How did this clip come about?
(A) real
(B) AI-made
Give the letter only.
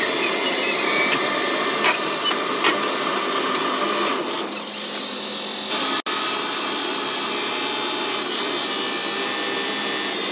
A